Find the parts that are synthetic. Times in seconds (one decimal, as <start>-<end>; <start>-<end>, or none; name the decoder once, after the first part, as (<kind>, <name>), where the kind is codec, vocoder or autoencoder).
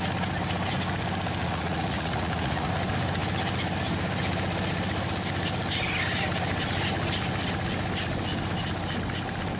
1.4-2.7 (vocoder, Vocos)